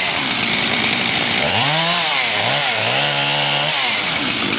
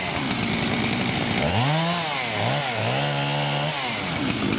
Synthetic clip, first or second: first